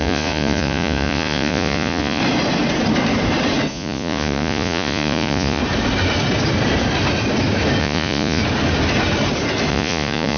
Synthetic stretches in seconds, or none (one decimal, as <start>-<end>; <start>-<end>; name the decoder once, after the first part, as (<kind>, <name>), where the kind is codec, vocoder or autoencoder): 0.0-2.2 (vocoder, Vocos); 3.7-5.6; 7.8-8.4; 9.7-10.4